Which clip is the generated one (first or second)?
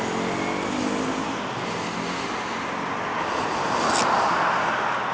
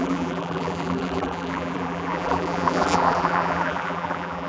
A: second